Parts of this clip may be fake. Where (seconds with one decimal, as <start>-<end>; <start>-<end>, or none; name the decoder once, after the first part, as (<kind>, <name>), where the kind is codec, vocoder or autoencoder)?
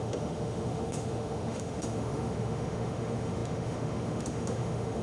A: 0.0-5.0 (autoencoder, DAC-VAE)